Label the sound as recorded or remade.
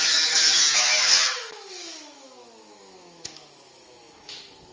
remade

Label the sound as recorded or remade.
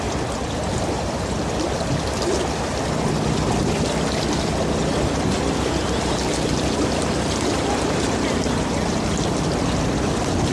recorded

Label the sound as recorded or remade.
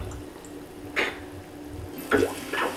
recorded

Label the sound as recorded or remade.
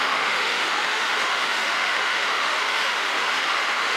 remade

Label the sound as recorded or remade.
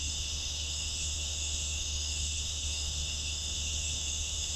remade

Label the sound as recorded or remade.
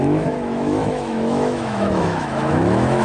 remade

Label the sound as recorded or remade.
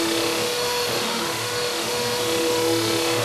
remade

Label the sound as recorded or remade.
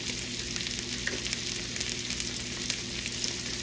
recorded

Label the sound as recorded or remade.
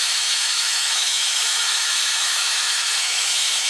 remade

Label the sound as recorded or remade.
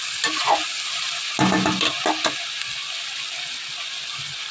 recorded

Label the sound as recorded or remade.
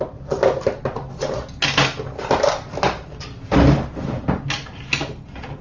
recorded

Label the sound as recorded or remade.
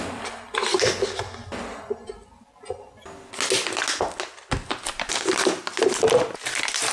recorded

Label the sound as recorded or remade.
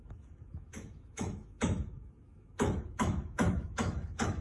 remade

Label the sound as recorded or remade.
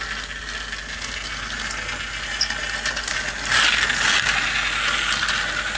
recorded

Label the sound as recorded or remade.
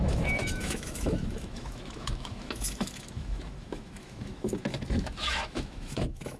remade